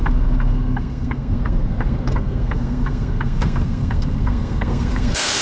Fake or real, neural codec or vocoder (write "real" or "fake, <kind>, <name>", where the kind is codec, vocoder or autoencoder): fake, codec, SNAC